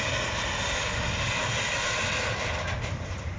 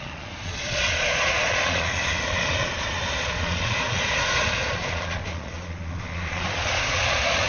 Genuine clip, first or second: first